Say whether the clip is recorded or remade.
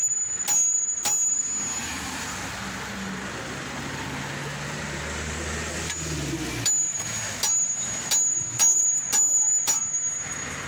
recorded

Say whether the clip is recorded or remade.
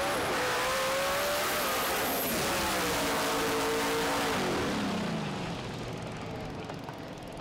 recorded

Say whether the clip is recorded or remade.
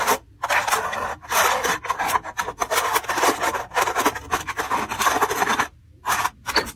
recorded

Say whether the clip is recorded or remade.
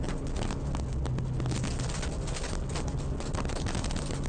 recorded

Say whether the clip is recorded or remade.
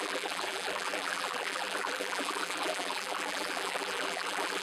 remade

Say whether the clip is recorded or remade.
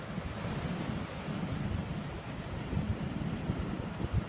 recorded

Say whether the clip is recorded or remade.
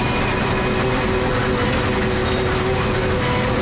recorded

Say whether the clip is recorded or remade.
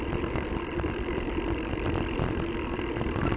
remade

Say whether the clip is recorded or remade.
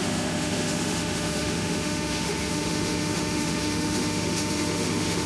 remade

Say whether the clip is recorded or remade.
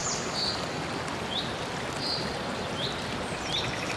remade